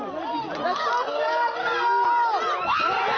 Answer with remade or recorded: recorded